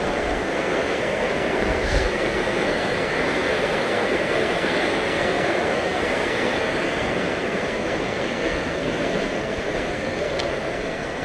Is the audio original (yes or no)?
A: no